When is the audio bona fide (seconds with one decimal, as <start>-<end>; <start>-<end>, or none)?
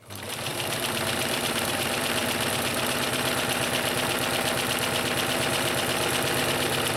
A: 2.2-6.4